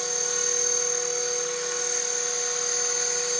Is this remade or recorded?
recorded